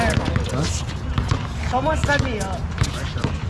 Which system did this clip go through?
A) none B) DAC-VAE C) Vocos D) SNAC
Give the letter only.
A